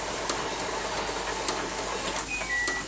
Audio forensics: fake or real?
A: real